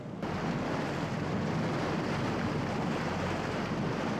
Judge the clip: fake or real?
real